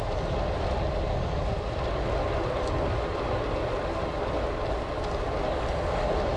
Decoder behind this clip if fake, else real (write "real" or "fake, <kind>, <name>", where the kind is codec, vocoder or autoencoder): real